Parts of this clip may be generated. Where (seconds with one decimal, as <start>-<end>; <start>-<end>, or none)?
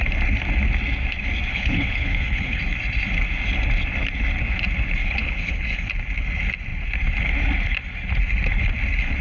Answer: 1.5-2.6; 5.0-5.9